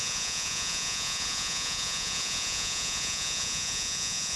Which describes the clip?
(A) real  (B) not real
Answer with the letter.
B